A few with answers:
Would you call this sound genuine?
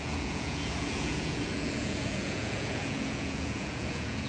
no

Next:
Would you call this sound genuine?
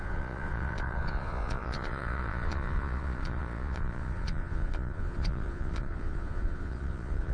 no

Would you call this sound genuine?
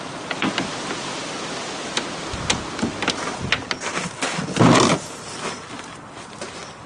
yes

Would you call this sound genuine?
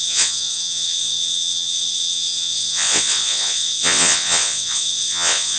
no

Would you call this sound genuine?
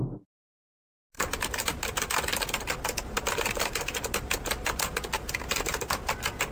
yes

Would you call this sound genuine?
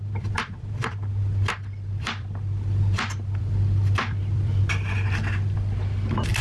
no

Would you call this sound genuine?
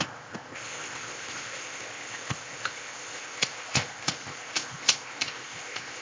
no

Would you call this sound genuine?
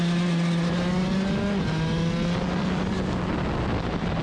yes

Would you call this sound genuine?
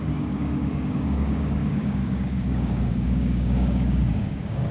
no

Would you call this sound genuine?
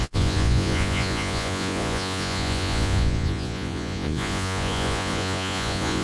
no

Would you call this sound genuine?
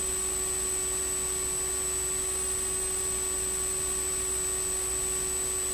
yes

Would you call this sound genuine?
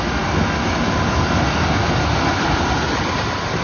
yes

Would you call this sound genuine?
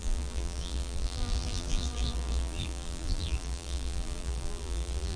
no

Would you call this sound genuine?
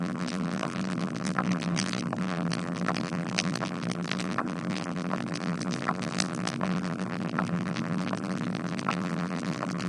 no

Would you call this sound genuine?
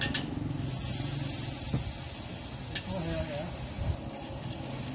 yes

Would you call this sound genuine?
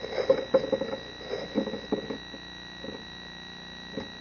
yes